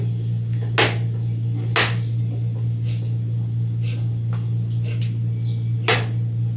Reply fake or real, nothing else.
real